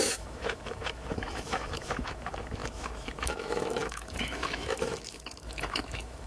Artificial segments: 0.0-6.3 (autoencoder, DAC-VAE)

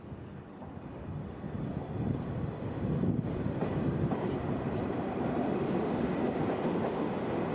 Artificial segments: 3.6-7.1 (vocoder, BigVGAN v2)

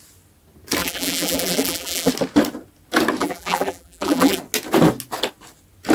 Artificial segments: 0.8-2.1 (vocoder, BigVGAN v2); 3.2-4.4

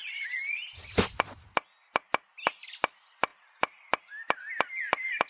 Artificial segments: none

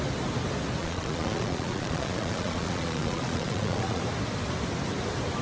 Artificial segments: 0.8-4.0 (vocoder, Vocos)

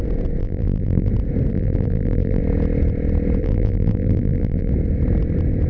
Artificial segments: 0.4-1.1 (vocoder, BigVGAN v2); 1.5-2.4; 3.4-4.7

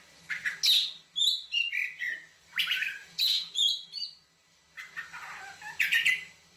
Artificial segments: 3.0-3.7 (vocoder, Vocos)